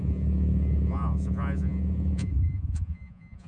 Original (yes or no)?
no